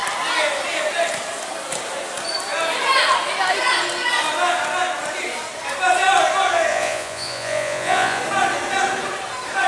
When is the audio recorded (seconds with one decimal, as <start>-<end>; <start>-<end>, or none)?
0.0-6.7; 8.2-9.7